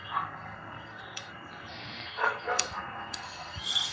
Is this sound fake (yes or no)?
yes